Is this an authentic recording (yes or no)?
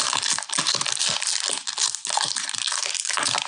yes